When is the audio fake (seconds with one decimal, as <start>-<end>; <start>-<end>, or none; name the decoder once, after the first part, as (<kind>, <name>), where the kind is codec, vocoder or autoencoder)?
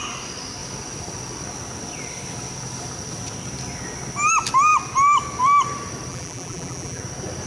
6.1-7.0 (vocoder, BigVGAN v2)